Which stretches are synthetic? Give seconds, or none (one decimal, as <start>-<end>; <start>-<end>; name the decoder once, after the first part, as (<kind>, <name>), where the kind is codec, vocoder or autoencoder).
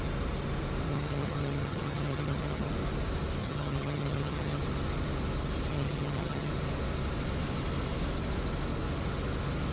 0.9-2.7 (vocoder, HiFi-GAN); 3.4-4.6; 5.7-6.5